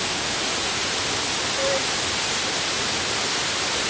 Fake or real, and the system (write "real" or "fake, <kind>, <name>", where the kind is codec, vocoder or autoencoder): real